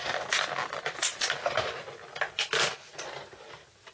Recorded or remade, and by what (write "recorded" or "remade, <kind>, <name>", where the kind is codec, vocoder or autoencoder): recorded